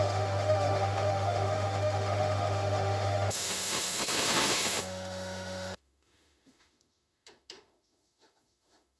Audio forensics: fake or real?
fake